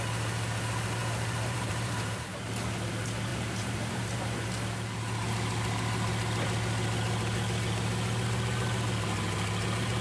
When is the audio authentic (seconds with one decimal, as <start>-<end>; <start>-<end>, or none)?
0.0-1.0; 2.5-3.3; 4.5-10.0